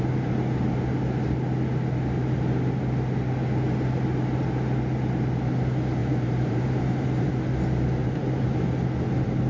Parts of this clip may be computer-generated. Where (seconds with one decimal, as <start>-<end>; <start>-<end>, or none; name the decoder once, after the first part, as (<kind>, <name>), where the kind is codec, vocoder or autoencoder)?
6.0-7.3 (vocoder, BigVGAN v2); 8.0-8.6